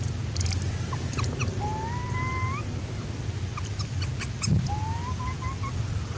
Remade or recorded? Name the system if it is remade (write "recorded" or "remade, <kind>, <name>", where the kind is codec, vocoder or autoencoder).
recorded